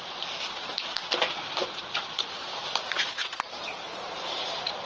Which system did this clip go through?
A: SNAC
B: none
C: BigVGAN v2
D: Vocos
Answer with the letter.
C